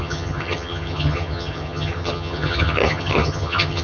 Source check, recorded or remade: remade